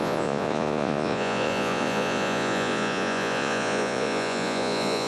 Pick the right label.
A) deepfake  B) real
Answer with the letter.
A